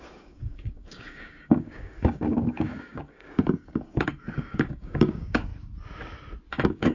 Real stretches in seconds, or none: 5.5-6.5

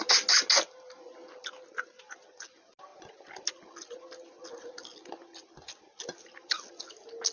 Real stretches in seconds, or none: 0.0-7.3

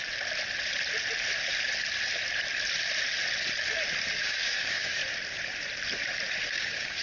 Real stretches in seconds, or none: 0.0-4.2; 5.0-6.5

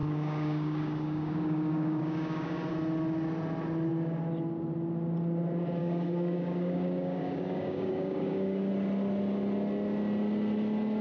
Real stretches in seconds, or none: 2.7-5.8; 8.7-11.0